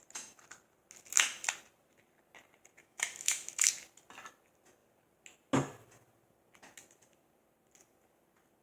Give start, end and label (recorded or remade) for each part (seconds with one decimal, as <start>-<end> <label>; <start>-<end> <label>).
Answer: 0.0-2.8 recorded; 2.8-3.7 remade; 3.7-8.6 recorded